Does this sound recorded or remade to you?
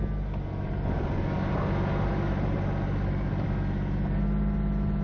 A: recorded